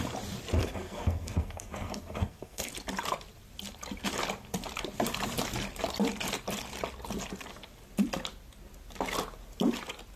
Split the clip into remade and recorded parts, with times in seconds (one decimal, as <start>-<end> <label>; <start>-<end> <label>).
0.0-0.6 recorded; 0.6-2.7 remade; 2.7-10.2 recorded